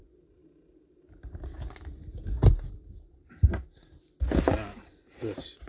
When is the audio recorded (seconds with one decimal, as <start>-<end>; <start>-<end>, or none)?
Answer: 0.0-5.7